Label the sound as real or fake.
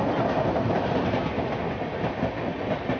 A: real